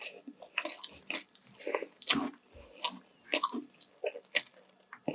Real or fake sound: real